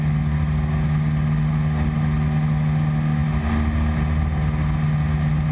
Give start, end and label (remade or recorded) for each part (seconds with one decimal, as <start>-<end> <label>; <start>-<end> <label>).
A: 0.0-5.5 recorded